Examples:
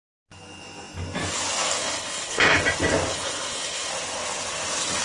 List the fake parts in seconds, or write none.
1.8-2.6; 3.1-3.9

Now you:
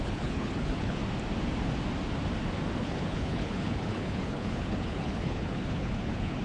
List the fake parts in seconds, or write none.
0.0-1.0; 2.8-6.4

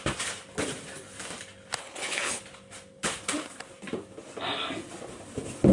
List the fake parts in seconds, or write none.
1.8-2.4